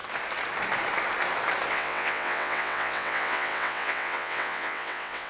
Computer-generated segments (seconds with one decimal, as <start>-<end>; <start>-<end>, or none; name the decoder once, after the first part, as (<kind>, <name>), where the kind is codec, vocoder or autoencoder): 1.7-5.3 (vocoder, WaveNeXt)

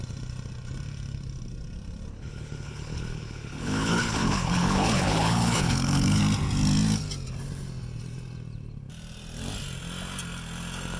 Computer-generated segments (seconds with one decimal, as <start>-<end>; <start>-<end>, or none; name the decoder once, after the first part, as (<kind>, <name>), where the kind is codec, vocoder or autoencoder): 2.1-6.2 (codec, HILCodec)